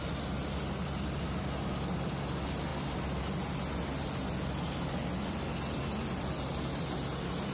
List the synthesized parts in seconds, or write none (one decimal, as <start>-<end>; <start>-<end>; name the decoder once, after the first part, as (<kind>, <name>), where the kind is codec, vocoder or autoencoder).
none